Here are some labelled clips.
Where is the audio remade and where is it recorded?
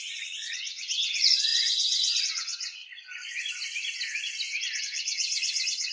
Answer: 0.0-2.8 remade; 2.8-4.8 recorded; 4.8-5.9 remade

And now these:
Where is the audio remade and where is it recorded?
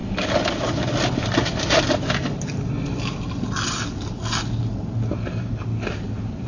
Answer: 0.0-2.4 remade; 2.4-6.5 recorded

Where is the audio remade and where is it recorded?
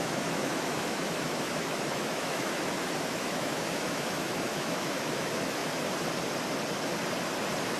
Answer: 0.0-5.6 remade; 5.6-7.8 recorded